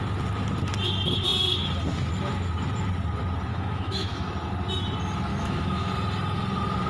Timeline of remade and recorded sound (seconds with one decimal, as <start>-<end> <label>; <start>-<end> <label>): 0.0-3.5 recorded; 3.5-4.3 remade; 4.3-5.3 recorded; 5.3-5.9 remade; 5.9-6.9 recorded